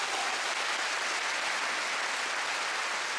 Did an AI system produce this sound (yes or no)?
no